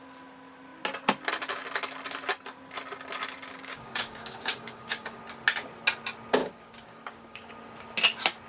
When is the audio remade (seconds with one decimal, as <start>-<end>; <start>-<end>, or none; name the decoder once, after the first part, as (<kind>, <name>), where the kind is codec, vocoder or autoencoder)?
3.5-5.2 (codec, DAC); 6.4-7.5